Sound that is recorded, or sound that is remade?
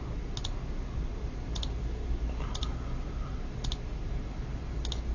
recorded